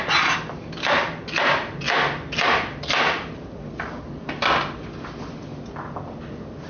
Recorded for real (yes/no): yes